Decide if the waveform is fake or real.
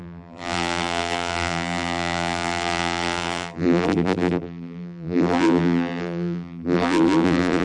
fake